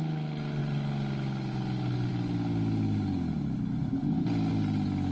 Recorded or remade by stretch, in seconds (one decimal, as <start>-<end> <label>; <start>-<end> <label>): 0.0-5.1 recorded